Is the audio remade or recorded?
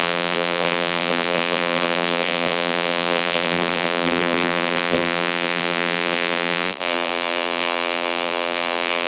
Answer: remade